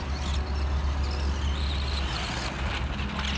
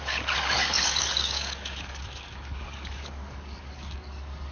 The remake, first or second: second